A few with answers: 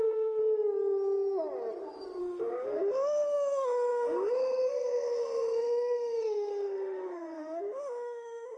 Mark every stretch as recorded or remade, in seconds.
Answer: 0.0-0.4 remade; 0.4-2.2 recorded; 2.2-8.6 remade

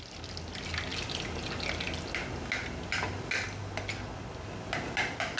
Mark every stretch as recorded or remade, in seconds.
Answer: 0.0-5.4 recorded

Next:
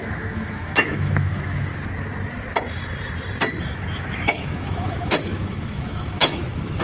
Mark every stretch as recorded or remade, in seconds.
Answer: 0.0-1.7 remade; 1.7-3.6 recorded; 3.6-6.8 remade